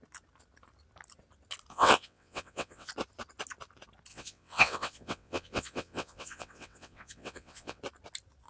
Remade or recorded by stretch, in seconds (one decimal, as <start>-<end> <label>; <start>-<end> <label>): 0.0-1.7 recorded; 1.7-2.9 remade; 2.9-4.1 recorded; 4.1-7.8 remade; 7.8-8.5 recorded